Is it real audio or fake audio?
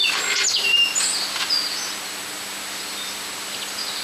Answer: real